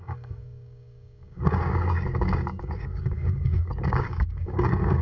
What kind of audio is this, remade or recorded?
remade